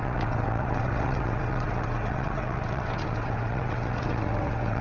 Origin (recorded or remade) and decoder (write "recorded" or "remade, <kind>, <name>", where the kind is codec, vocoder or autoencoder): remade, vocoder, WaveNeXt